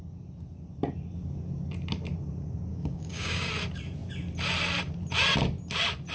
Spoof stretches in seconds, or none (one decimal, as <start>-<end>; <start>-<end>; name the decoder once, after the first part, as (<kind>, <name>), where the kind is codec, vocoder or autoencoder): 2.7-3.5 (codec, DAC)